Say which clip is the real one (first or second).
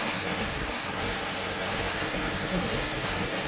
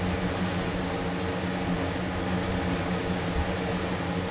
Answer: second